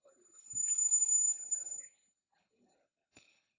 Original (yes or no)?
no